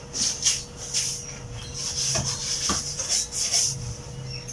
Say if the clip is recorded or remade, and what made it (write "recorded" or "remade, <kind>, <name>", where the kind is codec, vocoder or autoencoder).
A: recorded